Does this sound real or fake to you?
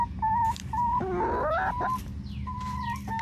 real